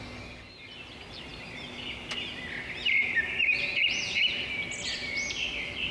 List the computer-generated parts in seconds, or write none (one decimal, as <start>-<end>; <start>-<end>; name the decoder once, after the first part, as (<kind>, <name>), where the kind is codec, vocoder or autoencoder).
none